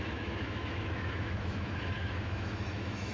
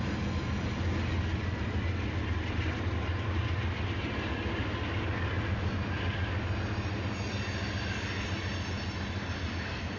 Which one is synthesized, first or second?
first